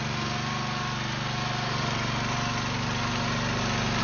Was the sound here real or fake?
real